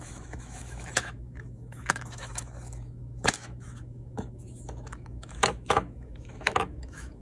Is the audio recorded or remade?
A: remade